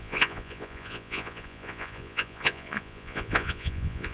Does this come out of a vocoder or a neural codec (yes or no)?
yes